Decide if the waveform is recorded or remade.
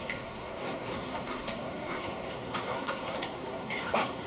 remade